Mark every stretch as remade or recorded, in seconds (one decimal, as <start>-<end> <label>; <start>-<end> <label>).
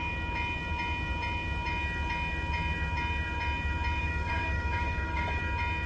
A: 0.0-4.0 recorded; 4.0-5.4 remade; 5.4-5.9 recorded